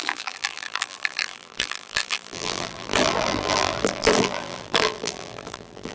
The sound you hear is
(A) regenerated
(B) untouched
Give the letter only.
A